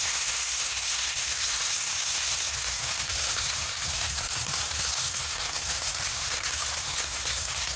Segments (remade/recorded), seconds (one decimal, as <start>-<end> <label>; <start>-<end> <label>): 0.0-7.8 remade